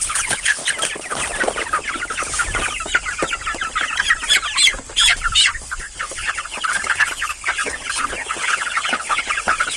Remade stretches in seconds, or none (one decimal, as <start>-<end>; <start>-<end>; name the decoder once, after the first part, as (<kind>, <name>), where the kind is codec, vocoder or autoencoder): 0.0-0.6 (codec, HILCodec); 5.7-9.8